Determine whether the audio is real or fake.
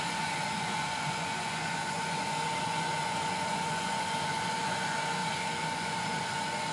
fake